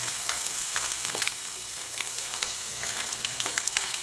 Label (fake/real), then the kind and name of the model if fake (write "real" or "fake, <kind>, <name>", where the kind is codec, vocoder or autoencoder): fake, codec, SNAC